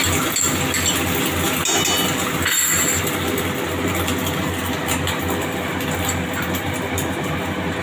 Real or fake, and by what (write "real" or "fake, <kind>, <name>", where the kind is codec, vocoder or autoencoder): real